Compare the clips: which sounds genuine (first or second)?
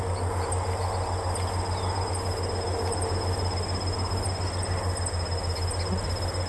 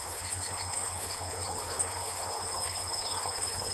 first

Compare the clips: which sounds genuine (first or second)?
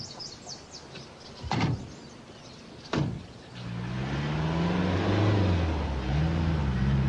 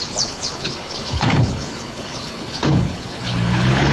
first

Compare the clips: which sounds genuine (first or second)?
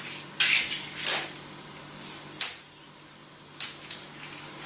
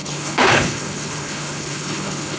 first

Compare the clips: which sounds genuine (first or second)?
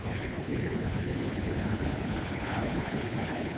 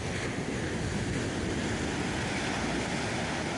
second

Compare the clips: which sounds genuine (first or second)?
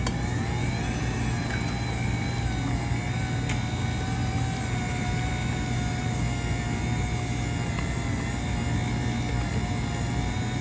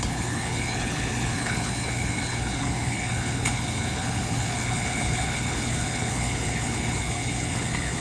first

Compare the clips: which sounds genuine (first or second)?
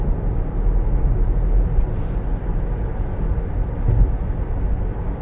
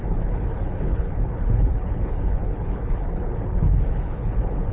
first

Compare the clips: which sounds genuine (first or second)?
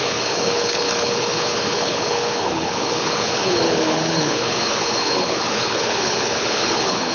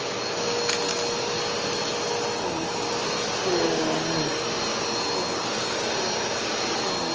second